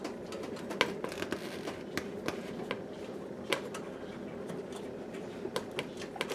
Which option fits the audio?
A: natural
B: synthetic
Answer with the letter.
A